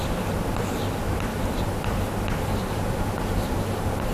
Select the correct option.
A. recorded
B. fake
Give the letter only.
A